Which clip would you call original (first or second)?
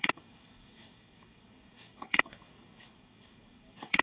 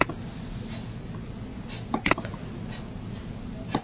second